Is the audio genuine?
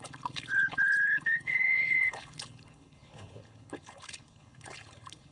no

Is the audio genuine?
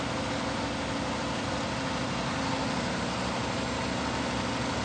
yes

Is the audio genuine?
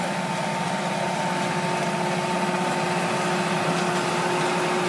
yes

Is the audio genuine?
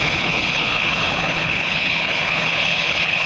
no